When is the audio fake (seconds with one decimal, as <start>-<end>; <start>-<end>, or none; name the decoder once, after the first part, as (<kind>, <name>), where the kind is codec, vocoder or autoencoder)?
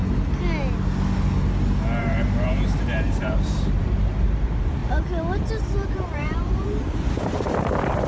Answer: 2.0-4.8 (vocoder, BigVGAN v2); 5.5-8.1